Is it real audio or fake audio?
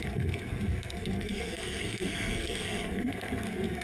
fake